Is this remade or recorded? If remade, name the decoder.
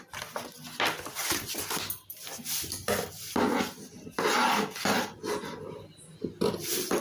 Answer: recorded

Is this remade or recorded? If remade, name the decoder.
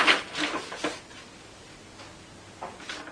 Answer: recorded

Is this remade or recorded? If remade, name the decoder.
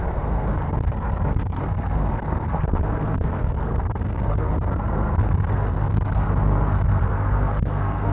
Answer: remade, codec, SNAC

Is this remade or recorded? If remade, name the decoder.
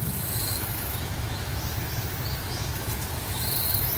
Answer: remade, autoencoder, DAC-VAE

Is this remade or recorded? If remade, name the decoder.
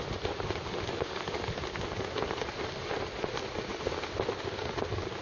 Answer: recorded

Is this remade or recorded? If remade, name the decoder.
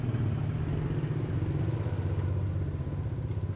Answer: recorded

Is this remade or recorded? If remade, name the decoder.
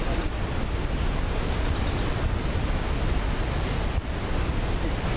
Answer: recorded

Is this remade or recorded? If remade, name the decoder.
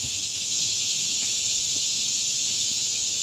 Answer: remade, autoencoder, DAC-VAE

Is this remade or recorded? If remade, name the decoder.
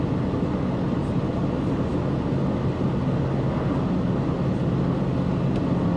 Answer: recorded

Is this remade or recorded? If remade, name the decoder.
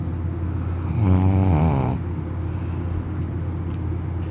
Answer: recorded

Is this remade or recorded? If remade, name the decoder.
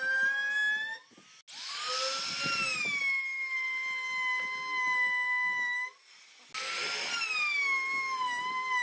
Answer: recorded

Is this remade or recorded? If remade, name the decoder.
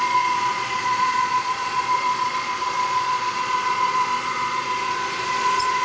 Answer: remade, vocoder, Vocos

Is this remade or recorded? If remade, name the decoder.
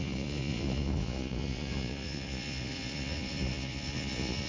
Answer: remade, vocoder, Vocos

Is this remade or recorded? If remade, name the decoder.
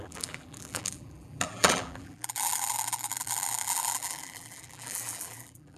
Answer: remade, vocoder, BigVGAN v2